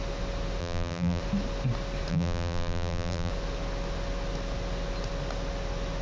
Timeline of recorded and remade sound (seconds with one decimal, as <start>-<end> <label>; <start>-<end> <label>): 0.0-0.6 recorded; 0.6-1.2 remade; 1.2-2.1 recorded; 2.1-3.3 remade; 3.3-6.0 recorded

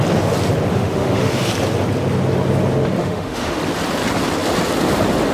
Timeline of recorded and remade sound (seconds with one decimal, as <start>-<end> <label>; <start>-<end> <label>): 0.0-0.7 recorded; 0.7-1.5 remade; 1.5-3.0 recorded; 3.0-3.6 remade; 3.6-5.3 recorded

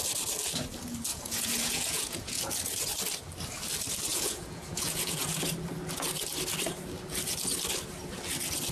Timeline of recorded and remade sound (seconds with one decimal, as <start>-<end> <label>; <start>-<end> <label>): 0.0-1.1 recorded; 1.1-2.5 remade; 2.5-4.1 recorded; 4.1-5.5 remade; 5.5-8.7 recorded

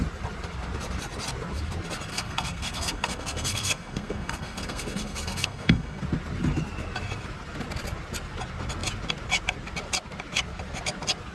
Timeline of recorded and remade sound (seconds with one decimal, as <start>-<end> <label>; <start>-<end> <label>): 0.0-2.1 recorded; 2.1-6.0 remade; 6.0-11.3 recorded